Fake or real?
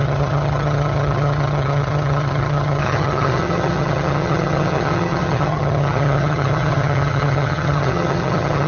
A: fake